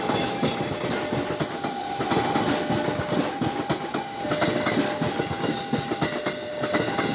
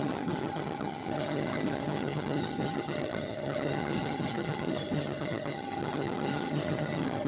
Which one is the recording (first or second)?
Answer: first